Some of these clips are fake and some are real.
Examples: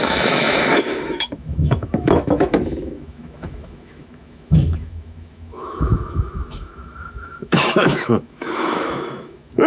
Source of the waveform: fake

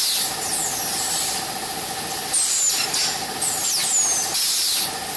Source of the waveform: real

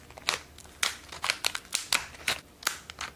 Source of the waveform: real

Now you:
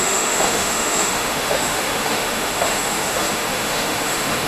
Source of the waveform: fake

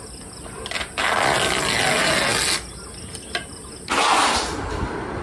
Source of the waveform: real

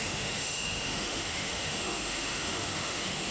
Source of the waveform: fake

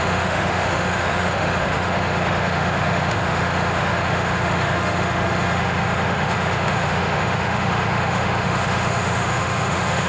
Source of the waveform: fake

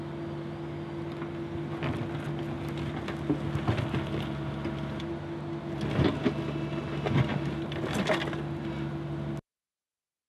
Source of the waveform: real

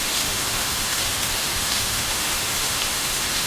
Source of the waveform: fake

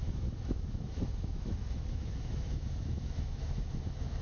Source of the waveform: fake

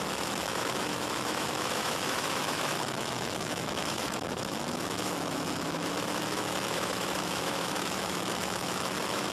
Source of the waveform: fake